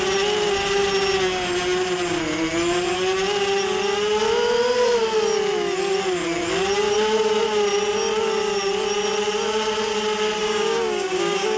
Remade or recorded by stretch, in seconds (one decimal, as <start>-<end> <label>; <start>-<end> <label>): 0.0-10.4 recorded; 10.4-11.6 remade